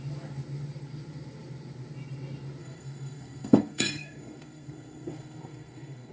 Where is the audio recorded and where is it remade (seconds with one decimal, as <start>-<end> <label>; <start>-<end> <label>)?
0.0-2.6 recorded; 2.6-6.1 remade